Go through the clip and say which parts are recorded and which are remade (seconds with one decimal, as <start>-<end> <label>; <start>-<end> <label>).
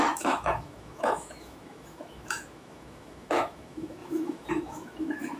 0.0-5.4 remade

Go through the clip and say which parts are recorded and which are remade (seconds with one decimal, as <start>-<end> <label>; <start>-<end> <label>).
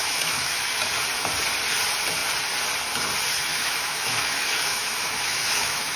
0.0-0.8 remade; 0.8-3.5 recorded; 3.5-6.0 remade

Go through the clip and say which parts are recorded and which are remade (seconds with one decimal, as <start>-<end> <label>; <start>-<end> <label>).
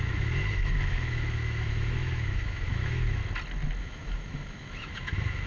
0.0-3.2 remade; 3.2-3.8 recorded; 3.8-5.5 remade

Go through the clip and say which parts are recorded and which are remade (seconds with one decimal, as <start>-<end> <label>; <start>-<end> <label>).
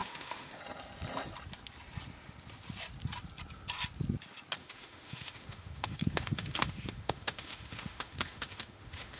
0.0-0.6 remade; 0.6-4.6 recorded; 4.6-9.2 remade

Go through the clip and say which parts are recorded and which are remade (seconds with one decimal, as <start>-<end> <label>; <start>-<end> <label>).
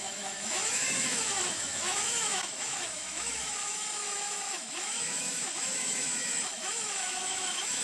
0.0-7.8 remade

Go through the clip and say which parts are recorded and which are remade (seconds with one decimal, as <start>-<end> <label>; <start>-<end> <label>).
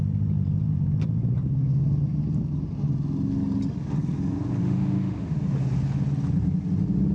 0.0-4.6 recorded; 4.6-5.2 remade; 5.2-7.1 recorded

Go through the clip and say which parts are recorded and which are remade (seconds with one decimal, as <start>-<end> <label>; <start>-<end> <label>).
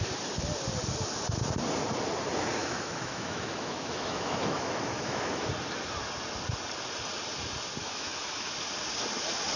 0.0-2.6 recorded; 2.6-5.5 remade; 5.5-7.8 recorded; 7.8-8.5 remade; 8.5-9.6 recorded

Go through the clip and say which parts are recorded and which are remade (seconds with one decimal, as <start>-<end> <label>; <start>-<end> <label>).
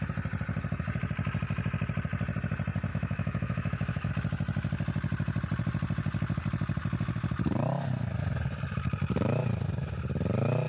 0.0-2.9 recorded; 2.9-4.1 remade; 4.1-10.7 recorded